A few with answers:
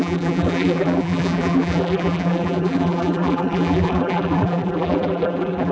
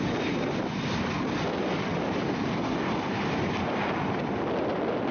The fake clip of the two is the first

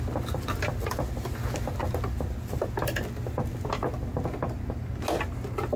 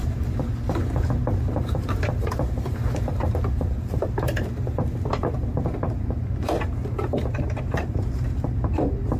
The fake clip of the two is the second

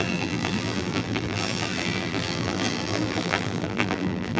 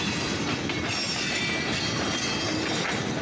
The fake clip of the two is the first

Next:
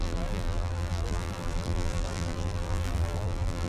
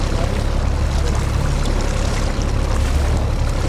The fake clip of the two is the first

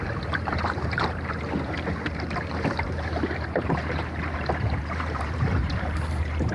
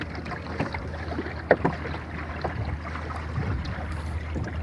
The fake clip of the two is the first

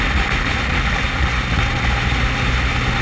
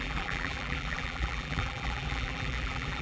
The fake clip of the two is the second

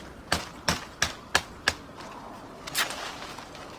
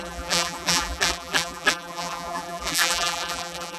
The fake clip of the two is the second